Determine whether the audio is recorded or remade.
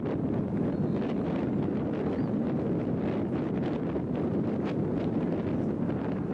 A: recorded